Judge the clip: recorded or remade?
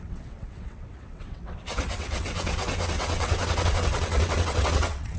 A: remade